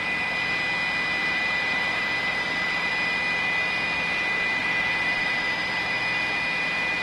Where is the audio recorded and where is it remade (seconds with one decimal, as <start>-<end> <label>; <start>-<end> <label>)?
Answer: 0.0-1.2 recorded; 1.2-2.9 remade; 2.9-4.6 recorded; 4.6-6.0 remade; 6.0-7.0 recorded